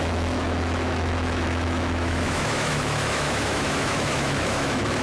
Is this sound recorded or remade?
remade